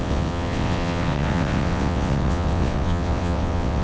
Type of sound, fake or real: fake